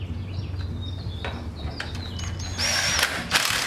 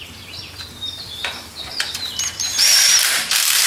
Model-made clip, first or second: second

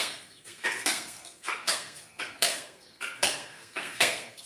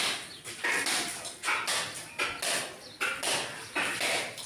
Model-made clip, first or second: first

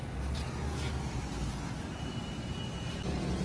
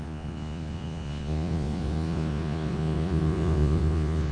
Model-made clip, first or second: second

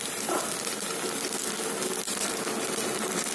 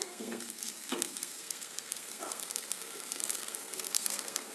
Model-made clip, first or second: second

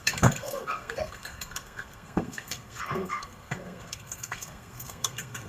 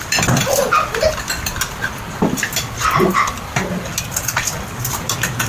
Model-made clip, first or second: first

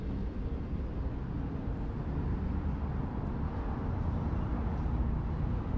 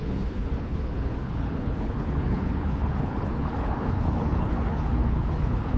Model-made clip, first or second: second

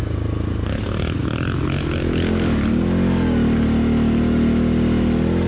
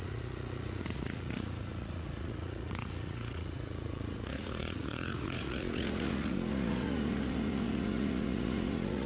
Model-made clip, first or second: second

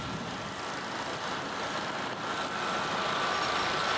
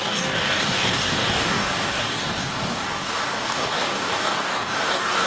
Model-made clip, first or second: second